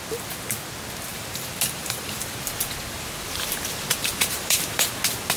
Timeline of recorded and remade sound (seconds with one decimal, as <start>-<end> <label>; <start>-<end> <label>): 0.0-1.1 recorded; 1.1-2.2 remade; 2.2-4.0 recorded; 4.0-4.9 remade; 4.9-5.4 recorded